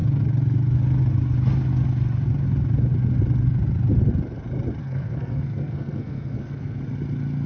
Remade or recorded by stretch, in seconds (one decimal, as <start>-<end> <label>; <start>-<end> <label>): 0.0-4.8 recorded; 4.8-6.8 remade; 6.8-7.5 recorded